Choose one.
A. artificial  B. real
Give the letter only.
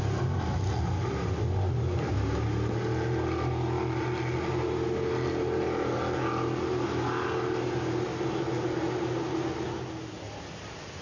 B